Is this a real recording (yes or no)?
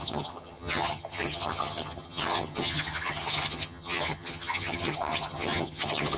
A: no